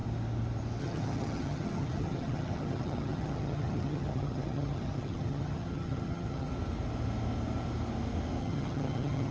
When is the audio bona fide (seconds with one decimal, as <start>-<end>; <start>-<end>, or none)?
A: 0.0-0.8; 6.5-8.4